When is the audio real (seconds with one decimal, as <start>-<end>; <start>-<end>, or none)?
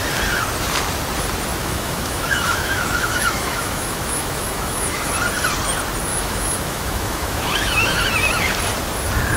0.0-1.6; 5.1-6.1; 8.0-9.4